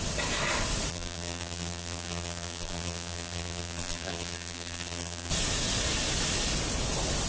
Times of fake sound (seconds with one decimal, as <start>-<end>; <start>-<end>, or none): 0.9-5.3